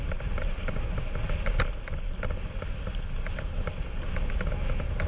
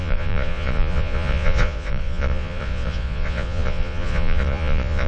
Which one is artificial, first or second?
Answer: second